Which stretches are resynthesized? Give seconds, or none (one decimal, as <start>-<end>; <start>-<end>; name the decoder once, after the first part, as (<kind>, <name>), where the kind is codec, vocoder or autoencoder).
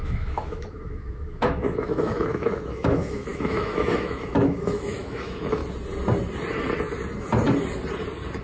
0.0-5.6 (autoencoder, DAC-VAE)